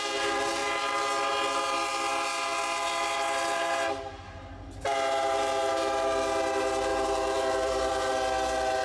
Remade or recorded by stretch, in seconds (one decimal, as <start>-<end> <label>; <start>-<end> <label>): 0.0-6.9 recorded; 6.9-8.1 remade; 8.1-8.8 recorded